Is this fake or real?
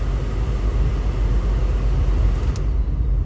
real